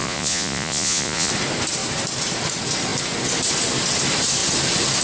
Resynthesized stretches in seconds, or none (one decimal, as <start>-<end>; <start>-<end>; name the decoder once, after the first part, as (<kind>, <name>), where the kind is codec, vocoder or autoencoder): 0.0-1.3 (vocoder, Vocos)